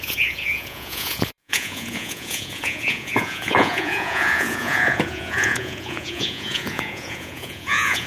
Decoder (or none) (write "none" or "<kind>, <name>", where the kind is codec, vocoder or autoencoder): vocoder, Vocos